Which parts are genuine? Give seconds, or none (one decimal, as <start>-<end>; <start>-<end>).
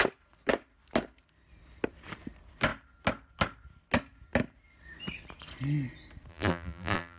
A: 0.0-6.3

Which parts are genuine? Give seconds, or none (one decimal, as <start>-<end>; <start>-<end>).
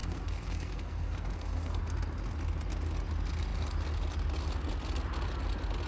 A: 1.8-5.9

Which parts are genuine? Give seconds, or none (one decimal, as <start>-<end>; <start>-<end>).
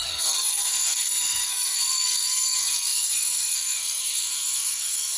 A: none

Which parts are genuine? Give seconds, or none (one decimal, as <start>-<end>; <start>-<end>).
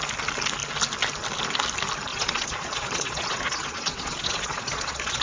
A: 0.0-2.1